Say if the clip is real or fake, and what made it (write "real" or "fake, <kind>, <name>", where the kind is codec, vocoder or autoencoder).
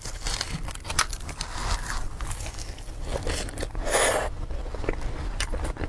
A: real